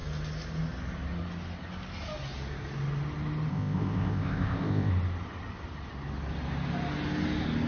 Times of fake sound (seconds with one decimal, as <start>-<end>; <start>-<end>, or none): 3.5-4.9